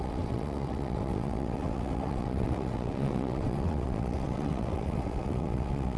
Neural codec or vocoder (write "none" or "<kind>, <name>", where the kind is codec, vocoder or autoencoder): vocoder, WaveNeXt